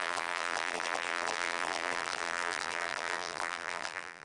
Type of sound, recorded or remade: remade